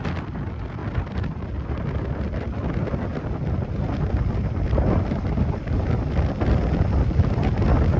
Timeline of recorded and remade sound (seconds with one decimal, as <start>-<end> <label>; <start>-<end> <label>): 0.0-0.8 recorded; 0.8-1.5 remade; 1.5-3.1 recorded; 3.1-6.3 remade; 6.3-8.0 recorded